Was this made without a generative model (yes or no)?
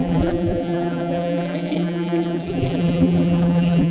no